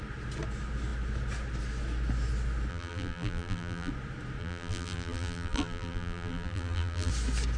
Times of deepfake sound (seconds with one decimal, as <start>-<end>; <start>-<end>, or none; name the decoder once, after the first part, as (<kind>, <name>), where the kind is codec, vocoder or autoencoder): 2.7-3.9 (vocoder, BigVGAN v2); 4.4-7.1